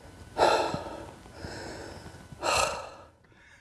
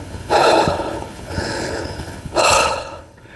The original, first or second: first